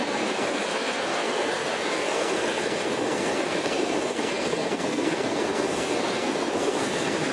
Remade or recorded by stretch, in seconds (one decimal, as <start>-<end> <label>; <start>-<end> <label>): 0.0-7.3 remade